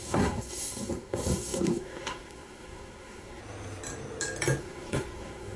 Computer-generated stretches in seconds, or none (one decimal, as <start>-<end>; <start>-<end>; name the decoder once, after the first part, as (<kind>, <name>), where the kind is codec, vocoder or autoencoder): 0.0-3.4 (codec, SNAC); 4.6-5.6